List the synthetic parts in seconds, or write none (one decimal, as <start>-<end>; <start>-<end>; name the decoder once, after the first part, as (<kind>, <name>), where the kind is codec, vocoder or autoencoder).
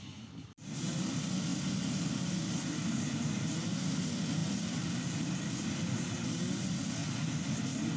0.0-1.5 (vocoder, BigVGAN v2); 3.3-7.0